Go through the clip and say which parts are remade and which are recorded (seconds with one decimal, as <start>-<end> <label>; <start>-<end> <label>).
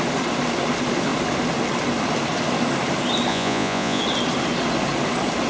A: 0.0-3.3 recorded; 3.3-4.0 remade; 4.0-5.5 recorded